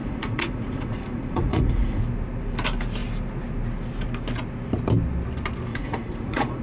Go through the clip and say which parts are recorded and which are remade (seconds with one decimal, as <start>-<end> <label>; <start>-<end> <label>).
0.0-2.0 remade; 2.0-5.7 recorded; 5.7-6.6 remade